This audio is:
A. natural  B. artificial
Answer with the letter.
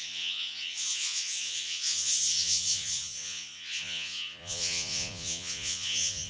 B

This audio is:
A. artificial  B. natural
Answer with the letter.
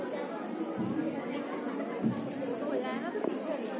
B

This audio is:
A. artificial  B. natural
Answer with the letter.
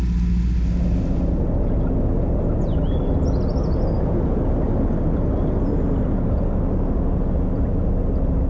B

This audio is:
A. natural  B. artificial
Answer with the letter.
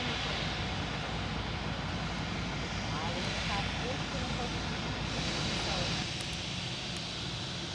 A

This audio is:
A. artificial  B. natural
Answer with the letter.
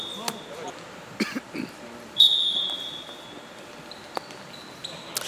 B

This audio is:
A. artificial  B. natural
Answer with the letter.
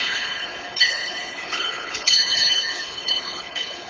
A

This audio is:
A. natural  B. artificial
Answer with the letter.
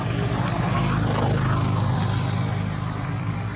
A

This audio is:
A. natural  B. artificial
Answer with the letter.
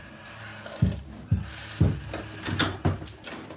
A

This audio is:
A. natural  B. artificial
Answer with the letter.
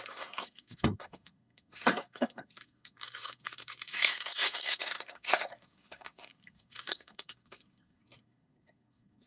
B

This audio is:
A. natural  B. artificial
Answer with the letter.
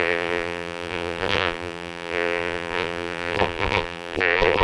B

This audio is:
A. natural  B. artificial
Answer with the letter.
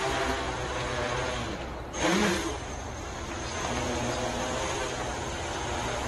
B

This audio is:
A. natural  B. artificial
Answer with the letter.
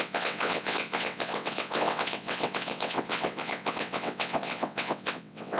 B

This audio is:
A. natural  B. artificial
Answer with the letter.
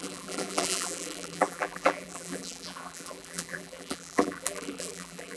B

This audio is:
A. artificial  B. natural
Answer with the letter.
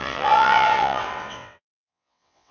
A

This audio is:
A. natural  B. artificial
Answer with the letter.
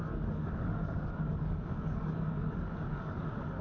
B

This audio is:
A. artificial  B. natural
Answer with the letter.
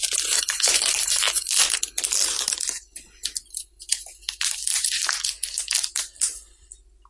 B